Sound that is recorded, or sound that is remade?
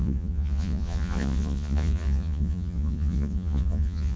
remade